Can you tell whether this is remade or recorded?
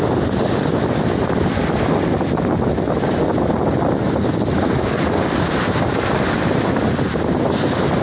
recorded